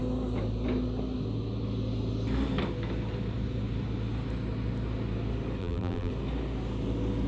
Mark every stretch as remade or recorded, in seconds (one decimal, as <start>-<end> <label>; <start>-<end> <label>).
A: 0.0-5.6 recorded; 5.6-6.1 remade; 6.1-7.3 recorded